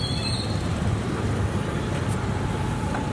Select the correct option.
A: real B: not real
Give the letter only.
B